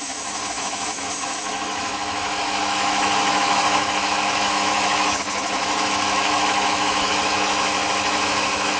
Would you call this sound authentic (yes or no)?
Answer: no